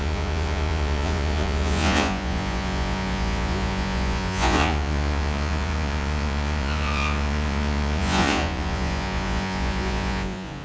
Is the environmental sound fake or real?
fake